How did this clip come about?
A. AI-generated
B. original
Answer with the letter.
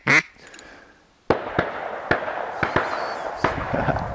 B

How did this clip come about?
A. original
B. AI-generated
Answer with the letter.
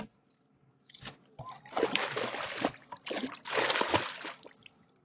A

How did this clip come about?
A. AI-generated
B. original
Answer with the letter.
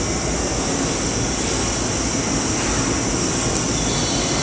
B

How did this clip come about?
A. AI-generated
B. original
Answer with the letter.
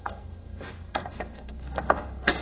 A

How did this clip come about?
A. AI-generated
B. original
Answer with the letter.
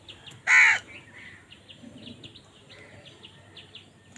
B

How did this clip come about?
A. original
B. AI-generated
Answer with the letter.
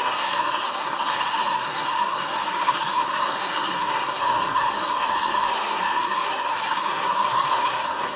B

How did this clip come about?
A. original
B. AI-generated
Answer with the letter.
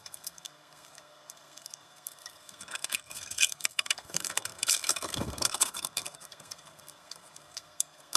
B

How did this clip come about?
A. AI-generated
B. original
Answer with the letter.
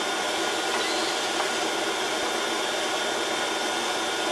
B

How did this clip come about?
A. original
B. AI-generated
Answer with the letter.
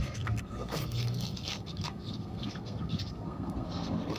B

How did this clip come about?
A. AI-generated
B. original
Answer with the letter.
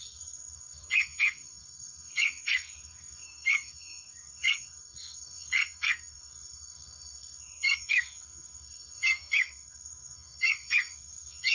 A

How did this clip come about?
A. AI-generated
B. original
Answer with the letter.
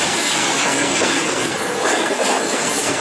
A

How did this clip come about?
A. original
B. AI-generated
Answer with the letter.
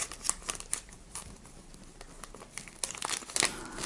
A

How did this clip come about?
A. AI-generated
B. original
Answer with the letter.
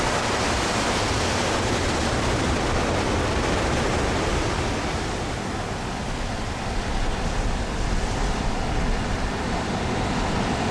B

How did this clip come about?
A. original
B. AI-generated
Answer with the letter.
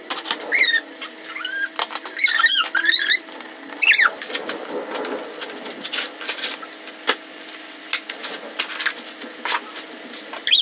A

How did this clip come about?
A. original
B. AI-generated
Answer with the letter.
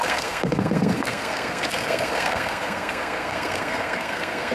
B